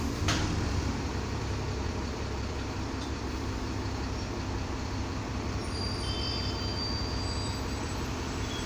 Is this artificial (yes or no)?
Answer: yes